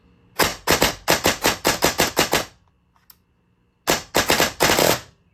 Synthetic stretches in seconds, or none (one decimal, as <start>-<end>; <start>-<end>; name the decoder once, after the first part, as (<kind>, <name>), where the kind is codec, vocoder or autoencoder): none